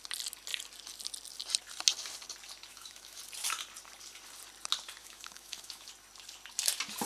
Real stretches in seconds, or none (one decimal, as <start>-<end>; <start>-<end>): 0.0-2.7; 3.2-5.0; 5.9-7.1